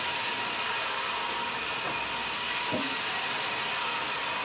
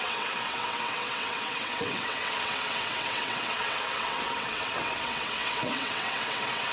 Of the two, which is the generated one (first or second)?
second